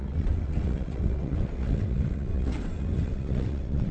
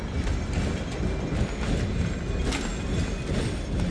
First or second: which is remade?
first